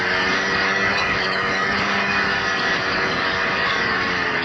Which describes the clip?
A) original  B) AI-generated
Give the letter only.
B